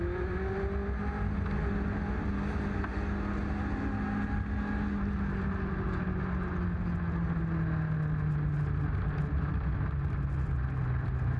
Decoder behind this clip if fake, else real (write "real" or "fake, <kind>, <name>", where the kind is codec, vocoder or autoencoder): real